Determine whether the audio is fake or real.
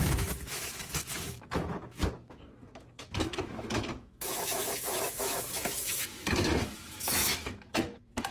fake